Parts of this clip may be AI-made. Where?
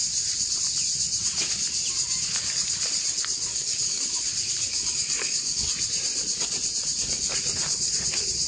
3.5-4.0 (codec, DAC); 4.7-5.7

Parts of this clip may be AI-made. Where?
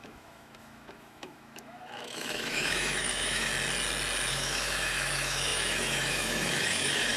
0.0-3.5 (autoencoder, DAC-VAE); 4.3-7.2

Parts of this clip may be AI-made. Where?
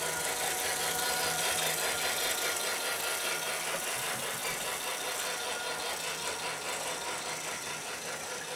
none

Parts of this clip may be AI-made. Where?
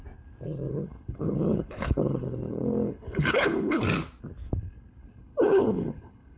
0.7-3.8 (codec, HILCodec); 5.0-6.4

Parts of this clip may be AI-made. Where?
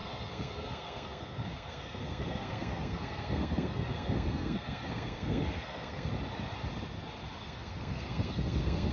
0.0-6.1 (codec, SNAC); 7.4-8.9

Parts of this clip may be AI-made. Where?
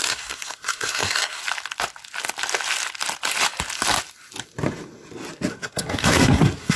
0.0-1.4 (codec, SNAC); 5.5-6.8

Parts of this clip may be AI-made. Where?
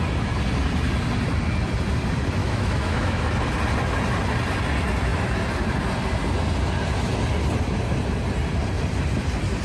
2.4-3.3 (autoencoder, DAC-VAE)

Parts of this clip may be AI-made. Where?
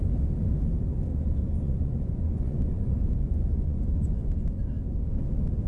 1.1-4.5 (vocoder, Vocos)